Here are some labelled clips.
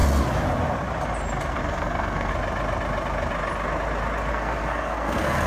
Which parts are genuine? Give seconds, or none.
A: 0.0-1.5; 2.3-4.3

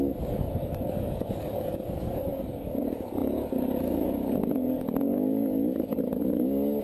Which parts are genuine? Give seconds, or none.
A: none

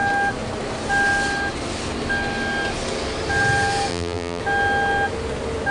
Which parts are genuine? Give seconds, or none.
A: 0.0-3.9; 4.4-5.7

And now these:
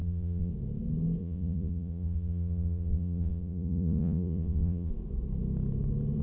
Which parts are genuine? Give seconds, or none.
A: 0.5-1.2; 4.9-6.2

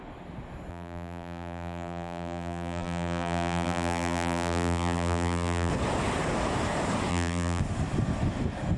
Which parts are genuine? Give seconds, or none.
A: 0.0-0.7; 5.7-7.1; 7.6-8.8

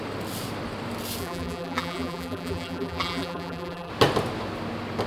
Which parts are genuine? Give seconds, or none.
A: 0.0-1.2; 3.9-5.1

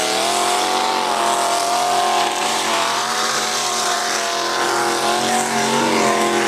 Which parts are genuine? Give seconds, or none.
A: 0.0-2.4; 4.0-6.5

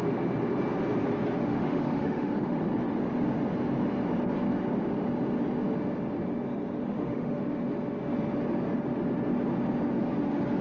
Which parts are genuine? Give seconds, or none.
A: 0.0-1.4; 2.6-6.8; 7.4-10.6